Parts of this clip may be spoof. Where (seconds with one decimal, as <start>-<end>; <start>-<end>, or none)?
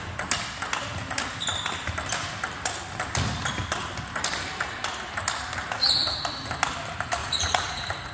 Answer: 7.2-8.1